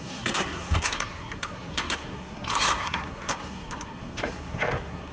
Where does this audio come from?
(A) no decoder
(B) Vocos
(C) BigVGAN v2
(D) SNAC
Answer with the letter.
D